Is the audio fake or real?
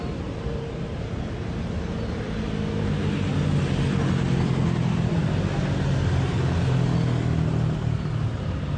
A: real